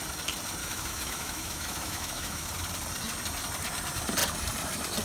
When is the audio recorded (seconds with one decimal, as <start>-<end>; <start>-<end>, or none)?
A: 0.0-0.6; 2.5-5.0